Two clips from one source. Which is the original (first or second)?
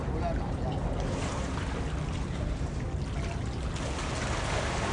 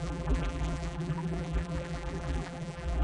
first